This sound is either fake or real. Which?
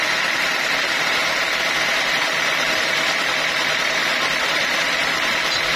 fake